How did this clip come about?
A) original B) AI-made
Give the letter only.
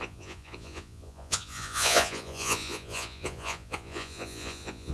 B